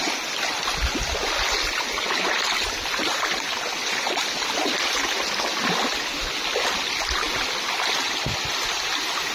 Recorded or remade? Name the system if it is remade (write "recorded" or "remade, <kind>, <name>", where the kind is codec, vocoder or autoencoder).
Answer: recorded